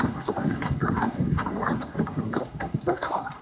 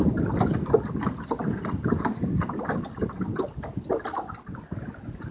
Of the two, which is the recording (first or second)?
second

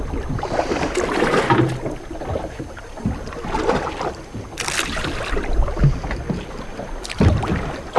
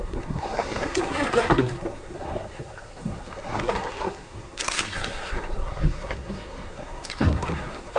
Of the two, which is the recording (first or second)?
first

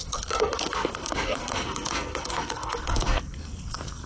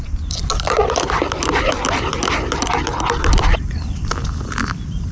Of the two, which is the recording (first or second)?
second